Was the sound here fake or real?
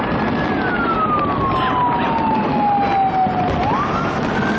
real